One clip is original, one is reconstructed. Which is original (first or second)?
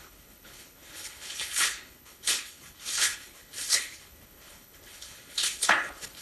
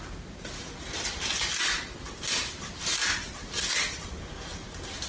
second